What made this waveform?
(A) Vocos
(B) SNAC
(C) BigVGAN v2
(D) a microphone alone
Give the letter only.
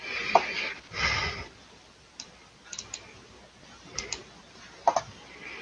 D